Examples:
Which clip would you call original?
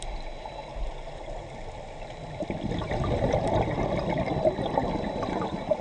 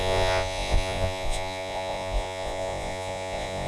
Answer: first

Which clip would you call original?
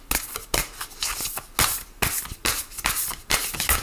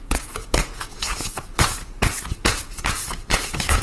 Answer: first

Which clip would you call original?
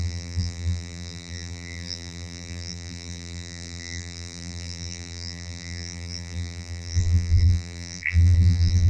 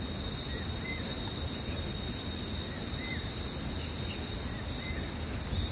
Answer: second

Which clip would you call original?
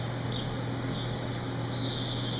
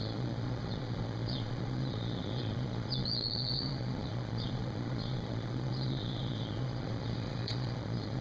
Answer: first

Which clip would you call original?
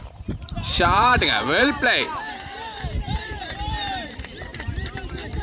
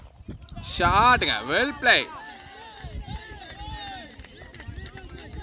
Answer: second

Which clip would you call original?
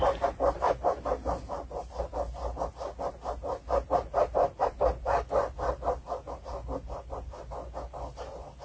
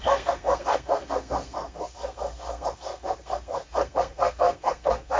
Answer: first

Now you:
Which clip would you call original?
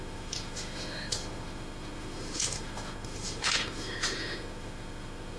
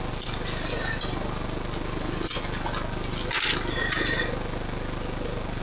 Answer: second